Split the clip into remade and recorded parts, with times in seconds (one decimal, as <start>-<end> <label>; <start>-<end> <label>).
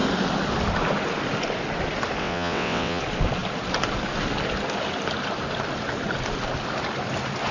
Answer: 0.0-2.2 recorded; 2.2-3.0 remade; 3.0-7.5 recorded